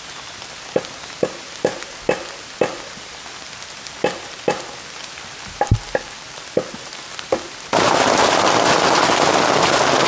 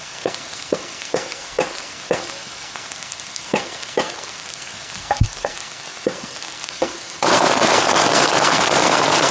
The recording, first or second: first